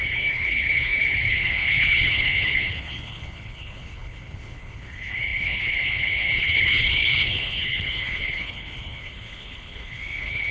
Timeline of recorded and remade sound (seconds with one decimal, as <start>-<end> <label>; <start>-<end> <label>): 0.0-10.5 remade